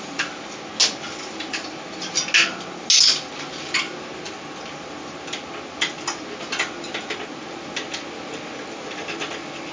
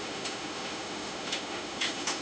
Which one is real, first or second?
first